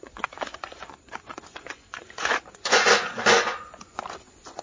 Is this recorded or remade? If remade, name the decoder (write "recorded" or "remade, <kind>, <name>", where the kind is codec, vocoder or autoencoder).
remade, vocoder, Vocos